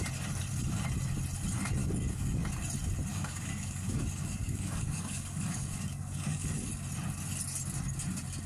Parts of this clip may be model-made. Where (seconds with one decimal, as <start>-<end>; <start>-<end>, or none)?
1.8-2.4; 3.1-6.7